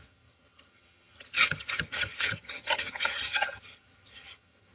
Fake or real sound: fake